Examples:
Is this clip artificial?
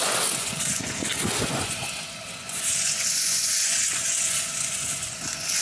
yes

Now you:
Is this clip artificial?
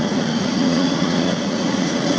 yes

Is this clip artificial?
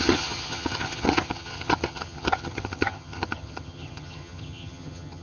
yes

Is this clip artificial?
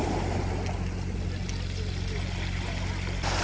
no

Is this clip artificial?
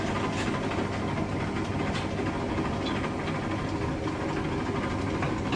no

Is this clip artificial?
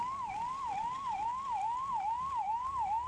no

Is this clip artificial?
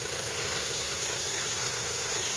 yes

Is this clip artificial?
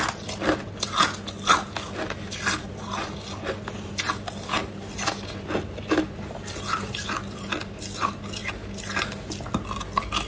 no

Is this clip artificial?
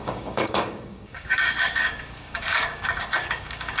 yes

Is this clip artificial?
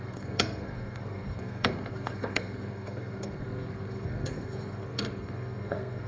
yes